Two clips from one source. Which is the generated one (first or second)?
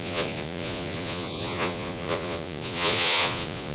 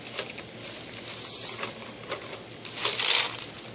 first